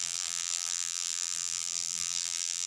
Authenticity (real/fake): fake